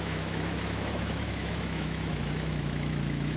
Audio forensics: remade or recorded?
remade